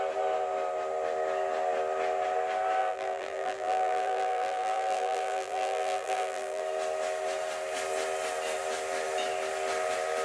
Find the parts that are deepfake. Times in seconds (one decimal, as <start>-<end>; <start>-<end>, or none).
2.8-6.6

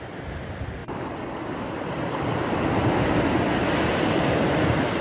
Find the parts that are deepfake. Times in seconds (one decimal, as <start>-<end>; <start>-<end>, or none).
0.0-0.8; 3.8-5.0